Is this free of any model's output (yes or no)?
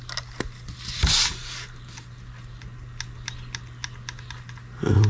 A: yes